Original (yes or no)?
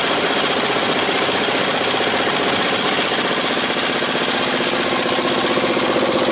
yes